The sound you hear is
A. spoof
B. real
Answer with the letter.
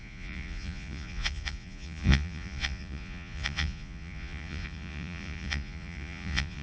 A